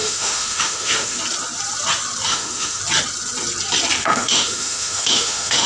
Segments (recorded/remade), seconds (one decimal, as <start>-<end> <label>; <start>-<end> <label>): 0.0-1.2 remade; 1.2-2.3 recorded; 2.3-2.8 remade; 2.8-4.0 recorded; 4.0-5.7 remade